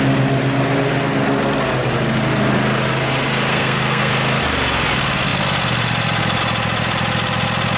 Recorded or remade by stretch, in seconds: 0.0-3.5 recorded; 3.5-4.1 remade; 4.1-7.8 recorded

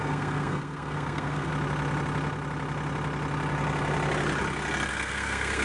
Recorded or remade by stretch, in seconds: 0.0-1.5 remade; 1.5-4.9 recorded; 4.9-5.6 remade

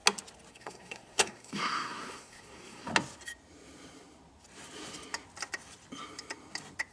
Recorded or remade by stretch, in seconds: 0.0-0.5 recorded; 0.5-2.9 remade; 2.9-6.9 recorded

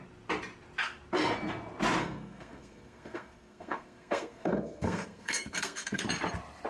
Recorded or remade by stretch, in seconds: 0.0-2.0 recorded; 2.0-6.0 remade; 6.0-6.7 recorded

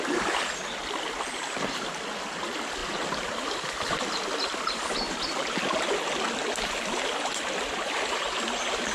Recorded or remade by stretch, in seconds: 0.0-8.9 recorded

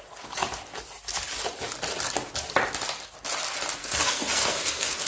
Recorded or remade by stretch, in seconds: 0.0-3.8 recorded; 3.8-5.1 remade

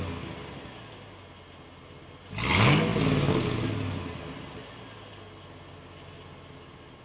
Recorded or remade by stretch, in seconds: 0.0-7.0 recorded

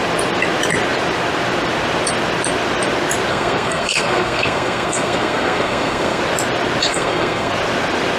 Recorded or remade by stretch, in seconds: 0.0-3.3 recorded; 3.3-6.2 remade; 6.2-6.9 recorded; 6.9-7.5 remade; 7.5-8.2 recorded